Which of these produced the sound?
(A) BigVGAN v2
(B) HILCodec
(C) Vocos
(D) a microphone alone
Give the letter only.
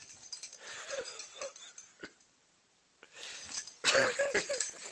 D